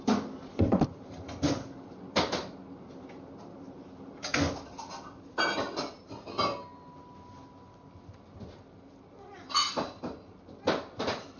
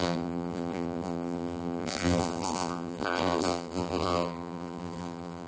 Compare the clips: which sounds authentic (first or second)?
first